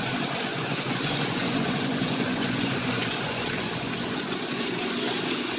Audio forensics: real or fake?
fake